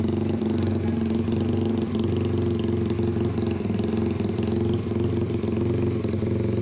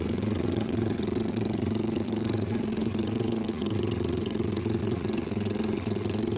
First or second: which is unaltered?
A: first